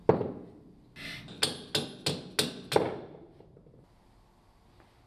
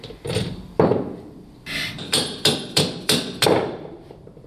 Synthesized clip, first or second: second